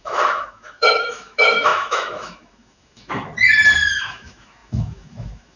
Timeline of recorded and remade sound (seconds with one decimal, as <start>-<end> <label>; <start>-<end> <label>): 0.0-3.3 remade; 3.3-4.0 recorded; 4.0-5.6 remade